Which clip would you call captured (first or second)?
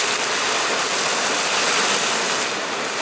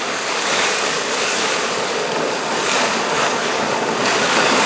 first